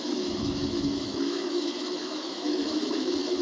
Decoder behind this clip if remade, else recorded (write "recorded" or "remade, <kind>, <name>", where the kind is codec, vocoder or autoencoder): remade, autoencoder, DAC-VAE